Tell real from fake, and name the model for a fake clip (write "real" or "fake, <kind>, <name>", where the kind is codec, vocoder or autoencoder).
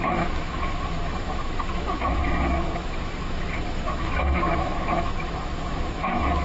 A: fake, autoencoder, DAC-VAE